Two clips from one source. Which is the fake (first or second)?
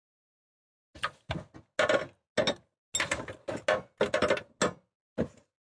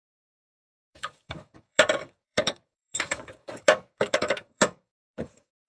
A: second